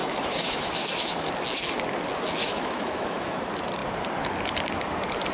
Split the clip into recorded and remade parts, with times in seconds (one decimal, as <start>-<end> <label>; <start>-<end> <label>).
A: 0.0-1.3 remade; 1.3-2.4 recorded; 2.4-3.4 remade; 3.4-5.3 recorded